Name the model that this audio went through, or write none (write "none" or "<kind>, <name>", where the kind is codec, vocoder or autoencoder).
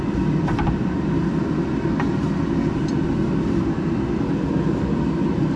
none